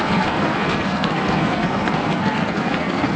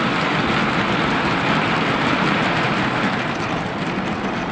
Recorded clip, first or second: second